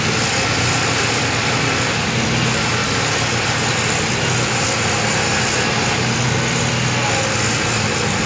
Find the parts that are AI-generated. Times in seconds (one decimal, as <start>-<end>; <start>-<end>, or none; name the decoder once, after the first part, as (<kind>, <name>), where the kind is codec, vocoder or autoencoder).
none